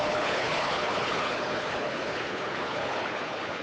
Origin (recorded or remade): remade